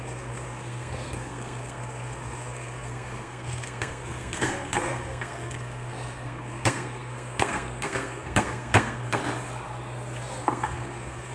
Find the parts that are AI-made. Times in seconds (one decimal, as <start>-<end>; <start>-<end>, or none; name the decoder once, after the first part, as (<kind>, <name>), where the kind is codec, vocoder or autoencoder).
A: 0.0-9.2 (codec, SNAC); 10.4-11.3